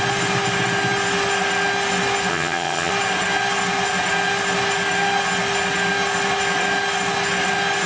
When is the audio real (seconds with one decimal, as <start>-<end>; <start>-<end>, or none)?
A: 0.0-2.3; 2.9-7.9